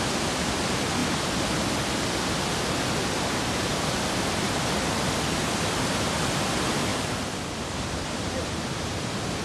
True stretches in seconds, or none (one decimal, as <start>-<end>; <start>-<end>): 0.0-9.4